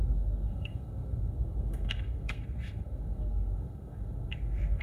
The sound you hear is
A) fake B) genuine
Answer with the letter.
A